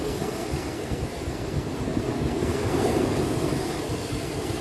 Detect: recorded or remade remade